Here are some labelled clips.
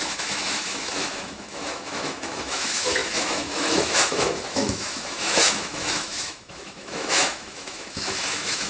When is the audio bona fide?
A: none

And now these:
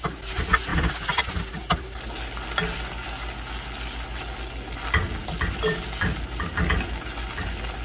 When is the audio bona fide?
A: 0.0-0.7; 1.6-5.2; 6.5-7.8